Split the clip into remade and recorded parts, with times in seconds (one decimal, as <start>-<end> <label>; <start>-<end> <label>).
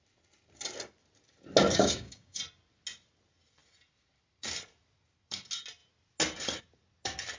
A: 0.0-1.7 recorded; 1.7-2.4 remade; 2.4-7.4 recorded